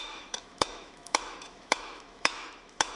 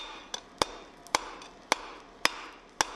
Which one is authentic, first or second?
second